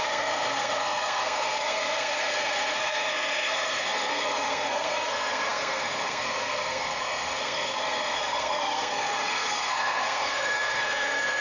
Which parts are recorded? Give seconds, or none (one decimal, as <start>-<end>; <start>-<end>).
none

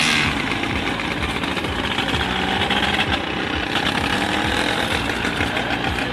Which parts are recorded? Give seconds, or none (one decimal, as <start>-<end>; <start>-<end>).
0.0-6.1